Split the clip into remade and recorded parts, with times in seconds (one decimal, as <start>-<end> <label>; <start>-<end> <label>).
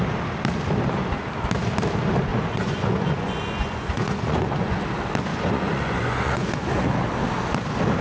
0.0-2.3 recorded; 2.3-4.8 remade; 4.8-5.3 recorded; 5.3-6.7 remade; 6.7-8.0 recorded